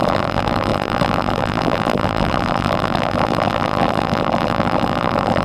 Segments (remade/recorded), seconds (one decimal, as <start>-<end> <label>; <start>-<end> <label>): 0.0-5.4 remade